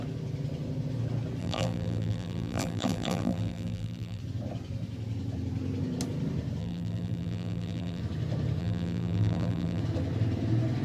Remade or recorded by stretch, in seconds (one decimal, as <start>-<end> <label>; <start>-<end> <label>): 0.0-1.4 recorded; 1.4-4.2 remade; 4.2-6.6 recorded; 6.6-8.0 remade; 8.0-8.6 recorded; 8.6-9.8 remade; 9.8-10.8 recorded